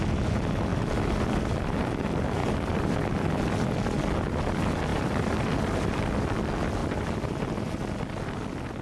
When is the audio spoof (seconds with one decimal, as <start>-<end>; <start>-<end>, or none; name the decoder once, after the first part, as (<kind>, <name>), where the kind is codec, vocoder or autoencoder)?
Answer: 2.4-3.3 (vocoder, BigVGAN v2); 4.9-5.5; 6.8-7.6